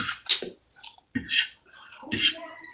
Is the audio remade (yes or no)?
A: no